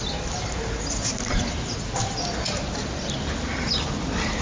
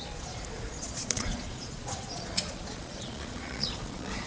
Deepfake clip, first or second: second